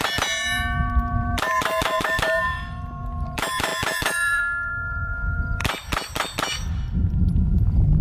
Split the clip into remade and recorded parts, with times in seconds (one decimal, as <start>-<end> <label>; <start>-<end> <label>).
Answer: 0.0-8.0 remade